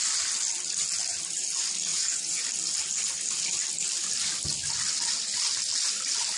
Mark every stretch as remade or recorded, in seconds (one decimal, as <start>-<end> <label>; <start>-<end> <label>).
0.0-1.9 recorded; 1.9-2.4 remade; 2.4-6.4 recorded